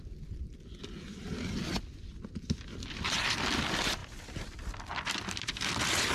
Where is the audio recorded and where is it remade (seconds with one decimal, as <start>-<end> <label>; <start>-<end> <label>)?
0.0-6.1 recorded